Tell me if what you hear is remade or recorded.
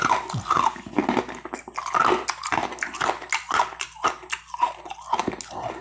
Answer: recorded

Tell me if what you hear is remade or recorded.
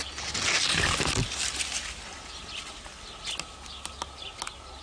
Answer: recorded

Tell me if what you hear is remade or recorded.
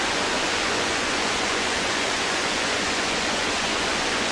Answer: remade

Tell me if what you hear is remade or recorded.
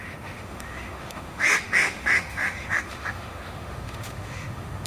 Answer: remade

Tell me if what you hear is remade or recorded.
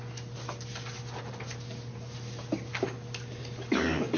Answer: recorded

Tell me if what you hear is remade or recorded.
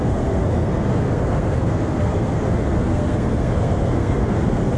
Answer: remade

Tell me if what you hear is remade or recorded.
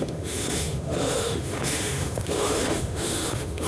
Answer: remade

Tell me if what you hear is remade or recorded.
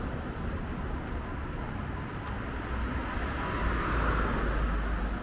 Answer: recorded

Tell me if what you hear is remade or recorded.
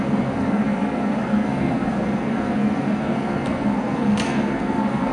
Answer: remade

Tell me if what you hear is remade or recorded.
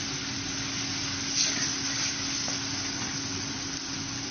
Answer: recorded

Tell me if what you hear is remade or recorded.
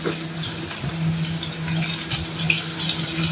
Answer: recorded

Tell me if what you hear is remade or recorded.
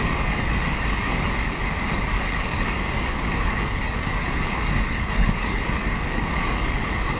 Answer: remade